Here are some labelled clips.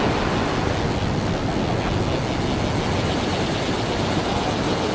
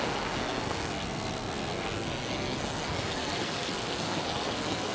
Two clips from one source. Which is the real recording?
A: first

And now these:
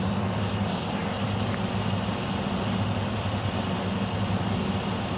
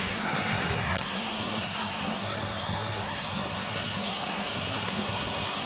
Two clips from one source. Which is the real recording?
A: first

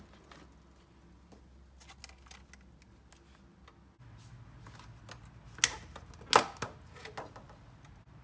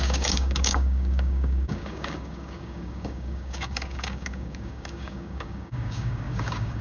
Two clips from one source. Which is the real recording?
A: first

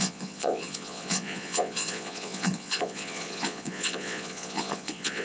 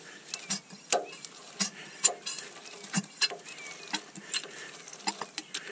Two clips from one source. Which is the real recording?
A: second